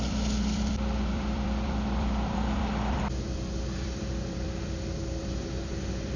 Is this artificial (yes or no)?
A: yes